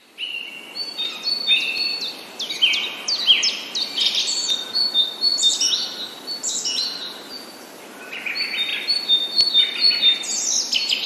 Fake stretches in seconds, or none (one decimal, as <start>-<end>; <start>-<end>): none